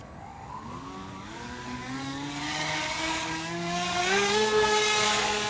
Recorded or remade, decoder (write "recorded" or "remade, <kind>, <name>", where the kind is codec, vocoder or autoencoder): remade, codec, DAC